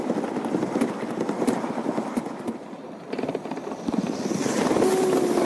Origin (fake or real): real